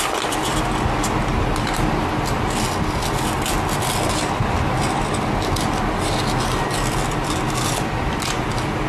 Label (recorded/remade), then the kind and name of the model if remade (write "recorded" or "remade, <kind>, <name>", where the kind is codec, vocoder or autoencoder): recorded